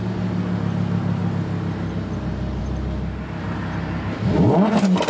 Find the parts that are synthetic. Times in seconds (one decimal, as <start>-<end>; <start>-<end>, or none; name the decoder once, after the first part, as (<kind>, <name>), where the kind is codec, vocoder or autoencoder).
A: none